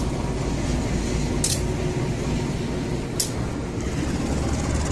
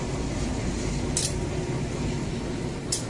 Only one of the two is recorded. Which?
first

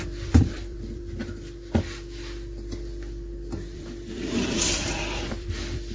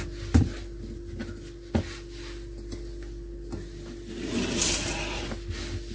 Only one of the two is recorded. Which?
second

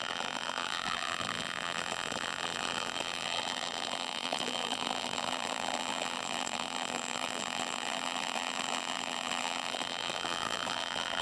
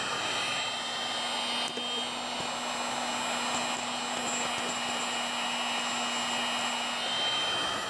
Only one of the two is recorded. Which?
second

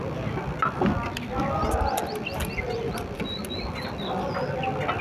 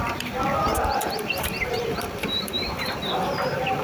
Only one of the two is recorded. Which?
first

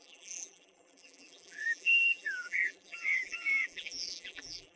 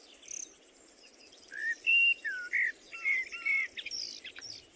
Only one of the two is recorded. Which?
second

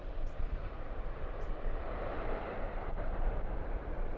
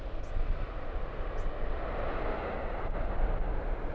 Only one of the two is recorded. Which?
second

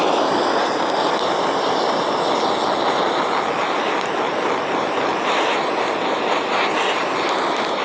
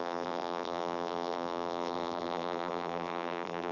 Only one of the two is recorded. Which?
first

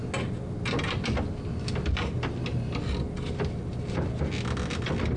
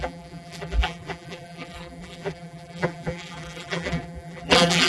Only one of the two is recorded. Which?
first